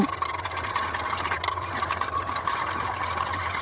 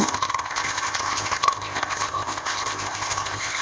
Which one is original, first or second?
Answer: first